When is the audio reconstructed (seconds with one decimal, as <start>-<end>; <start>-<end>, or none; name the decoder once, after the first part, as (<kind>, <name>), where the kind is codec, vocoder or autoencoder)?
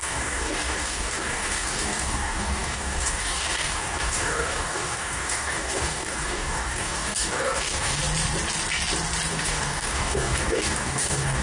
0.0-8.0 (codec, DAC); 9.3-11.4